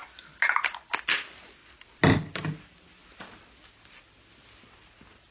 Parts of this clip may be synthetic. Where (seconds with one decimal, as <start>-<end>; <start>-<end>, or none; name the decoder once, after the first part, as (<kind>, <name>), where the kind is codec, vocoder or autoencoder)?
none